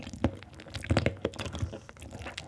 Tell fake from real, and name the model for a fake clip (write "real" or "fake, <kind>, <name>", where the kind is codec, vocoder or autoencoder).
real